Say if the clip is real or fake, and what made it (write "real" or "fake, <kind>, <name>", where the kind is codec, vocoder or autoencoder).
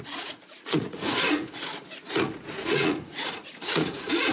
fake, vocoder, Vocos